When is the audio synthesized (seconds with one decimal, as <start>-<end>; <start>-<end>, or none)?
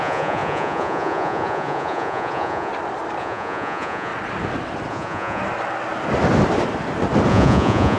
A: 0.0-2.7; 3.2-4.1; 4.9-5.4; 7.3-8.0